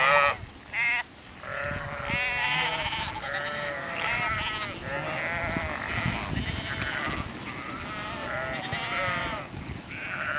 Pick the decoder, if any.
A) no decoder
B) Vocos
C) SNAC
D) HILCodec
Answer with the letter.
A